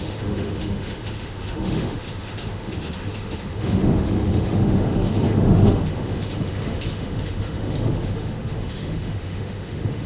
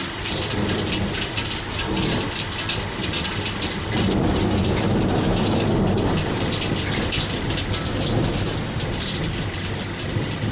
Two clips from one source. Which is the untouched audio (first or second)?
second